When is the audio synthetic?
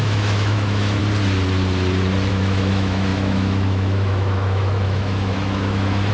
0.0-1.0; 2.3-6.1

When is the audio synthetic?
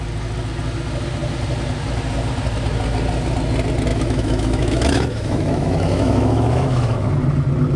3.9-7.1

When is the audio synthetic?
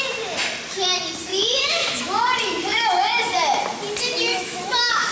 1.3-2.0; 2.7-3.2; 4.3-5.1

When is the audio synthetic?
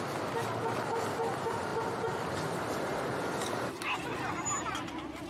none